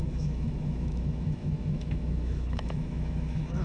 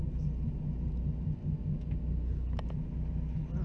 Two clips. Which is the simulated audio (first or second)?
first